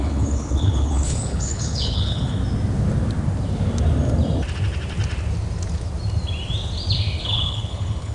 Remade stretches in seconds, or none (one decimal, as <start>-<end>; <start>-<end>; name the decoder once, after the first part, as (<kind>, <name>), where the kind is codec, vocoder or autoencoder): 0.0-2.4 (codec, HILCodec); 7.2-8.1